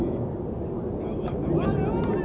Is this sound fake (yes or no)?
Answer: no